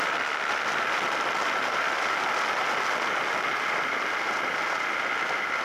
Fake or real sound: real